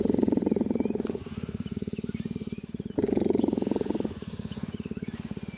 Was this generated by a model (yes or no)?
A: yes